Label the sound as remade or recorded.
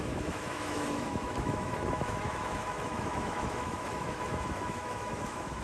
remade